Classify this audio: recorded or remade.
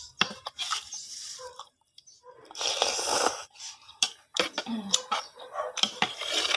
remade